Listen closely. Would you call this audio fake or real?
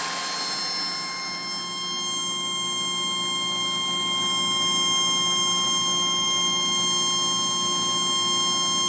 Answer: real